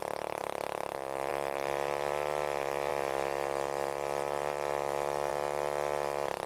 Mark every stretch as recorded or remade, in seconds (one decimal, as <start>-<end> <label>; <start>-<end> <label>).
0.0-6.5 recorded